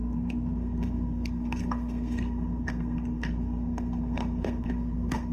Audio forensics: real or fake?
fake